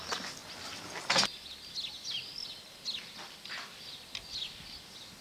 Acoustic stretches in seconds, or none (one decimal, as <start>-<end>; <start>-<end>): 0.0-5.2